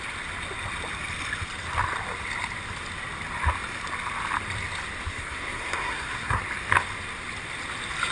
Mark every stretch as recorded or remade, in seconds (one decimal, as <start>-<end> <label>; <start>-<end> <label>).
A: 0.0-5.1 recorded; 5.1-6.4 remade; 6.4-8.1 recorded